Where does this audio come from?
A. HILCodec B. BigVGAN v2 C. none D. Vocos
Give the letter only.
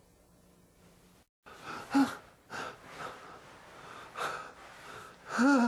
C